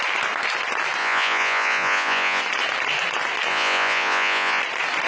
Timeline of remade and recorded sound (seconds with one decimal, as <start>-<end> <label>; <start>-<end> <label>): 0.0-1.0 recorded; 1.0-2.4 remade; 2.4-3.5 recorded; 3.5-4.6 remade; 4.6-5.1 recorded